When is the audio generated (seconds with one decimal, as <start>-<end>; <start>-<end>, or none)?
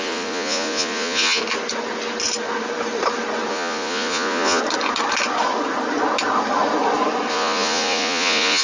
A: 0.0-1.4; 3.5-4.6; 7.3-8.6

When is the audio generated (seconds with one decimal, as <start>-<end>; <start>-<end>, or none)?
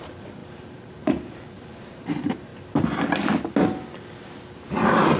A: 0.0-2.5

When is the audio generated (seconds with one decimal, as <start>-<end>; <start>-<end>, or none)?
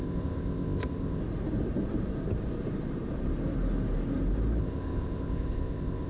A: 0.0-1.2; 4.6-6.1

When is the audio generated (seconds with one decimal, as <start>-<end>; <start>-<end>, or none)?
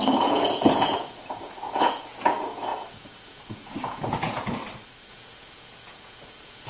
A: 0.0-4.6; 5.1-6.7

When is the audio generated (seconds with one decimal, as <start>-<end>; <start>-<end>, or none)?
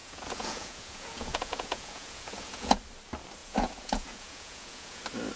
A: 0.0-2.8; 3.4-5.0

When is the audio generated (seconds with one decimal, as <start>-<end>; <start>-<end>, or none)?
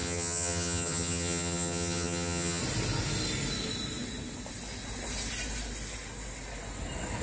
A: 0.0-2.6